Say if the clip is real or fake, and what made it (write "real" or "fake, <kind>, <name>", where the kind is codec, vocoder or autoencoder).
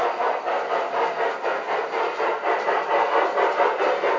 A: real